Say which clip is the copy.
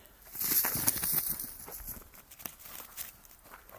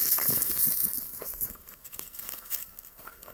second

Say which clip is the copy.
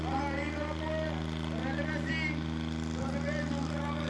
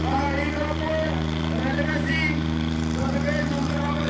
second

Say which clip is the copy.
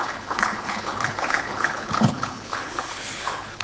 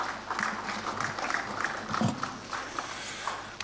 first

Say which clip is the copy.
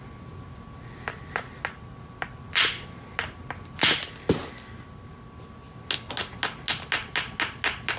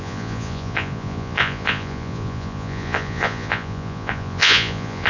second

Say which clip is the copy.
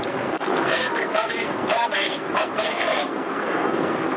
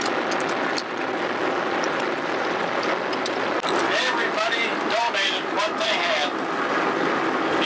first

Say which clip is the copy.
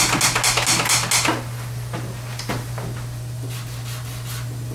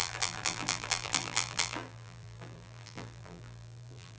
second